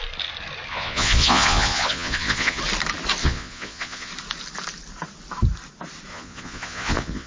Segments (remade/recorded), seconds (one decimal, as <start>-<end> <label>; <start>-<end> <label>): 0.0-0.7 recorded; 0.7-2.6 remade; 2.6-3.2 recorded; 3.2-4.1 remade; 4.1-6.1 recorded; 6.1-7.3 remade